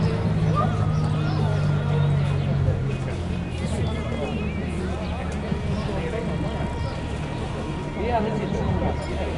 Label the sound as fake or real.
real